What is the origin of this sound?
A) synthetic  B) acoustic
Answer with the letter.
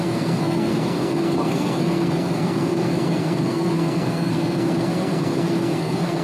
A